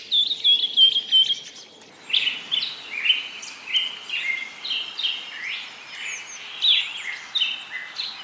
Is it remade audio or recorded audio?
recorded